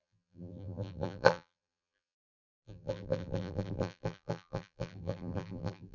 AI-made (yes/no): yes